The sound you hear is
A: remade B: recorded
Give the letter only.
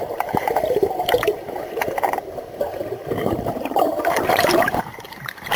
A